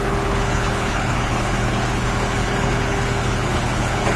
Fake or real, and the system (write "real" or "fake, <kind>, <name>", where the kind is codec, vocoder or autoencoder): fake, codec, HILCodec